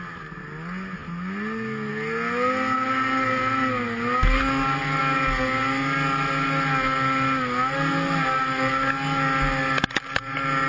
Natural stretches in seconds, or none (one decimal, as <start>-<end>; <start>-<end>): 0.0-10.7